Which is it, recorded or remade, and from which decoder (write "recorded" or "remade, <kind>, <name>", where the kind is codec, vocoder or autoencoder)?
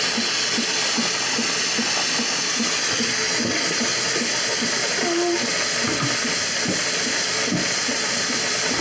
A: recorded